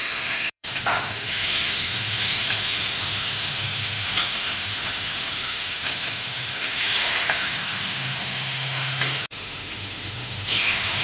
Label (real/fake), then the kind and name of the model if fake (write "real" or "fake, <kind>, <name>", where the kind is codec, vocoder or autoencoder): fake, autoencoder, DAC-VAE